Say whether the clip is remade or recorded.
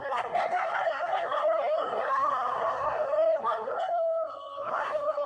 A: remade